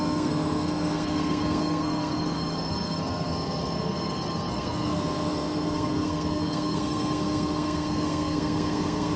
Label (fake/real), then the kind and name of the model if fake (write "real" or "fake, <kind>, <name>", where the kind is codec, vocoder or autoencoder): fake, codec, SNAC